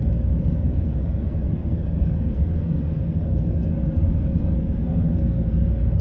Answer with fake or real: fake